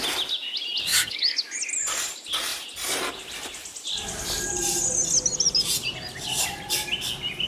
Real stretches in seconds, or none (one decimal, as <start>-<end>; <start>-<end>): 0.0-0.9; 1.6-7.5